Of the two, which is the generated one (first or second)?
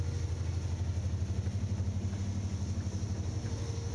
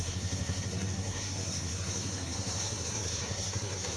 second